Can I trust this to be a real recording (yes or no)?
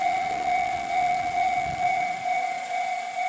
no